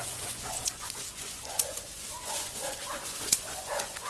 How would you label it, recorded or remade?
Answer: remade